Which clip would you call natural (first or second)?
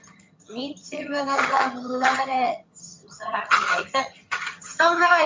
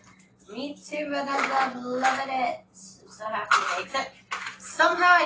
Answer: second